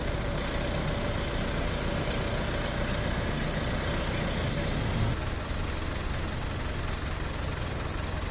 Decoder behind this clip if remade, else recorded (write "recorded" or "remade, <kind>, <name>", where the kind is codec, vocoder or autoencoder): recorded